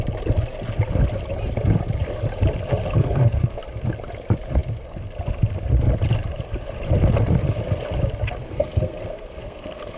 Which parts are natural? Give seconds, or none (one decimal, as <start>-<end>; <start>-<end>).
0.0-3.0; 3.6-8.4